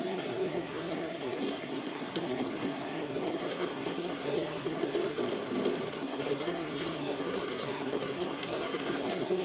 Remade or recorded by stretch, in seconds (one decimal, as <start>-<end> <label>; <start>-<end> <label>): 0.0-5.2 remade; 5.2-5.9 recorded; 5.9-9.4 remade